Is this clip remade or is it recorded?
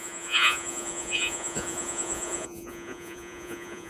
remade